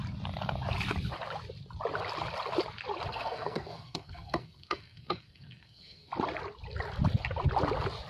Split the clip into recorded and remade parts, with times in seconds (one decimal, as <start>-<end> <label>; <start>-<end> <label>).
0.0-3.1 recorded; 3.1-6.1 remade; 6.1-8.1 recorded